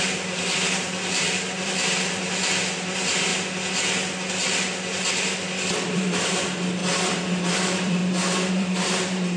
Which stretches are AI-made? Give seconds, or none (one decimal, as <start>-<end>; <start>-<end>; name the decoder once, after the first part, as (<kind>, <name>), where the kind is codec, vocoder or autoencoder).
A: 0.0-3.3 (vocoder, BigVGAN v2); 5.9-6.8; 7.4-8.0; 8.5-9.4

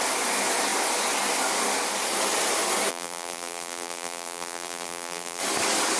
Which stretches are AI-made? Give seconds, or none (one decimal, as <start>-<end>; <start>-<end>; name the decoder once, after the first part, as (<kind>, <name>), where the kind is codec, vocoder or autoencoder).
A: 2.9-5.4 (vocoder, BigVGAN v2)